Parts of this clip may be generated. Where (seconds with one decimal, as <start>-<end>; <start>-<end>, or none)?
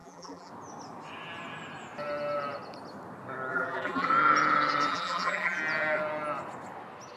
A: 0.0-0.5; 3.5-4.1; 4.9-5.6